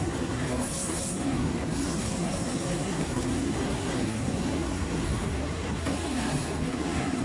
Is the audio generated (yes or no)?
yes